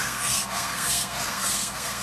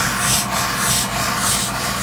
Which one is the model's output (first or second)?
first